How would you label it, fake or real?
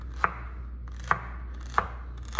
real